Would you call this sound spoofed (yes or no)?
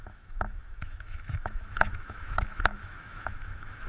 yes